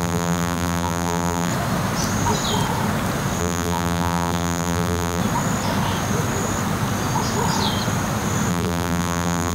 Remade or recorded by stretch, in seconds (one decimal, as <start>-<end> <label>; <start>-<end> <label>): 0.0-1.5 remade; 1.5-3.4 recorded; 3.4-5.2 remade; 5.2-8.5 recorded; 8.5-9.5 remade